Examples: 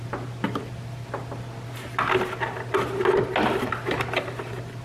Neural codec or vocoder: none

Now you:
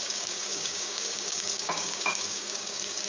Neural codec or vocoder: codec, DAC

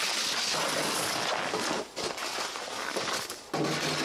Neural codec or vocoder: none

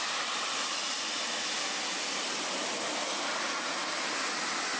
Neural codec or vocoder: none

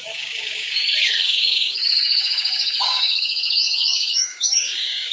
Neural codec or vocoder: codec, DAC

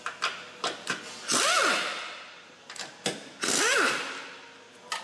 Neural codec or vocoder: none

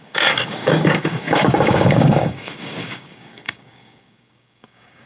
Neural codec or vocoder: codec, DAC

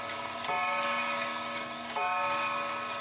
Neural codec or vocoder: codec, DAC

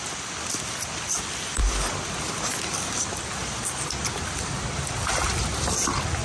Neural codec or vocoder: none